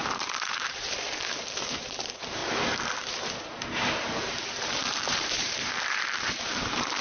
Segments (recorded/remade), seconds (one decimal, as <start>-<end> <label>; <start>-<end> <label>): 0.0-2.4 remade; 2.4-3.1 recorded; 3.1-7.0 remade